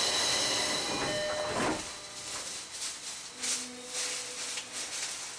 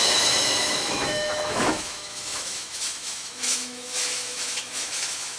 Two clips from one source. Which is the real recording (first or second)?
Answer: first